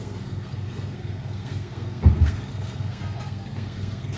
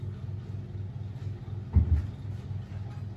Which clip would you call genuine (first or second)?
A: second